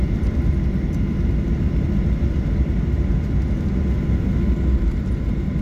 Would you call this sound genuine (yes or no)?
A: yes